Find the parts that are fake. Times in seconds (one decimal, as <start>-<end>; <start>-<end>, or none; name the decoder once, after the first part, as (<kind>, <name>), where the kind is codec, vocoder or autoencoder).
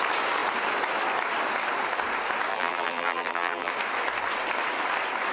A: 2.5-3.7 (vocoder, BigVGAN v2)